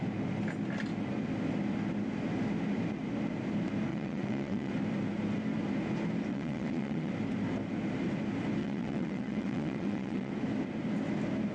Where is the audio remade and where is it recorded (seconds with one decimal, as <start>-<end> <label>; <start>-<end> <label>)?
0.0-3.9 recorded; 3.9-4.7 remade; 4.7-6.3 recorded; 6.3-7.1 remade; 7.1-8.6 recorded; 8.6-10.3 remade; 10.3-11.5 recorded